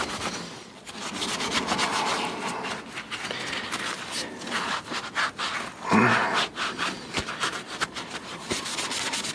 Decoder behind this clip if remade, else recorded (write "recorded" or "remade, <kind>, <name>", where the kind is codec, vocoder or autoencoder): recorded